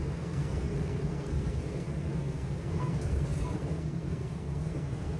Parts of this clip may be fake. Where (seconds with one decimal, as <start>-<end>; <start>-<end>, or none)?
0.0-5.2